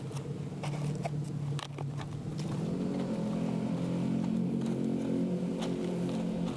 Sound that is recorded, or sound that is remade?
recorded